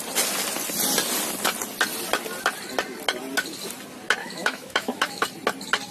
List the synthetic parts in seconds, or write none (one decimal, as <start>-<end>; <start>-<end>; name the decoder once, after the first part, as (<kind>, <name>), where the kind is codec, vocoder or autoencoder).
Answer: 4.2-5.2 (autoencoder, DAC-VAE)